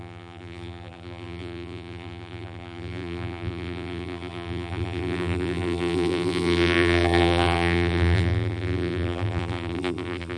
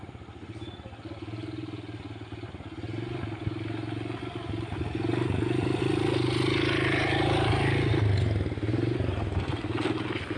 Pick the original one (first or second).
second